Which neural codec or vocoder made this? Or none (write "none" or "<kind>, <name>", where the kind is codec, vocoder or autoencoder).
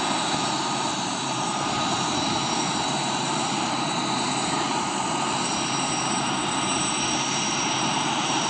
vocoder, BigVGAN v2